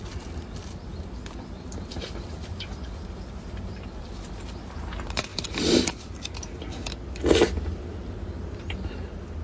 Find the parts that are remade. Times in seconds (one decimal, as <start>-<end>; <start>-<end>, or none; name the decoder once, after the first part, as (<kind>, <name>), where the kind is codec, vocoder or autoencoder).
0.9-4.6 (vocoder, BigVGAN v2); 5.3-6.3